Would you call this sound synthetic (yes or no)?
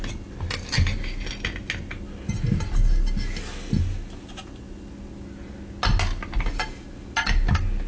no